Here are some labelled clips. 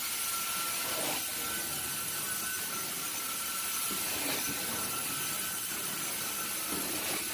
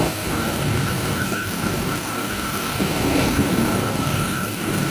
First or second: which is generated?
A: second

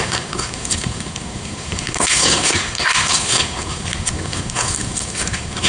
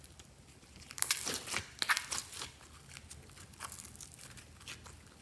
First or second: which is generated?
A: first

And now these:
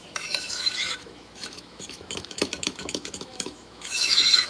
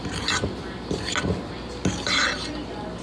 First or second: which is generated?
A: first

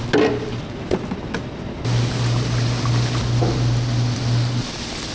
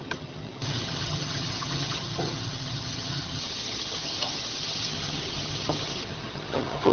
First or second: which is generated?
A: second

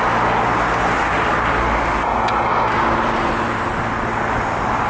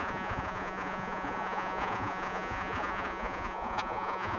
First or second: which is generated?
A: second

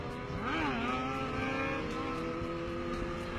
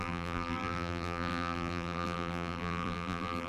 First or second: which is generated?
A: second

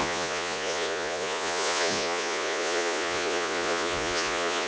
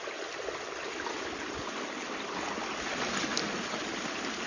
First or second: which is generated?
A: first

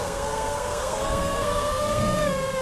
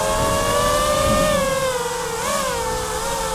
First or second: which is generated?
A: first